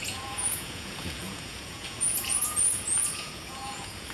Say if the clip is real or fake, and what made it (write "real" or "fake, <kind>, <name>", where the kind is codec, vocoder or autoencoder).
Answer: fake, vocoder, Vocos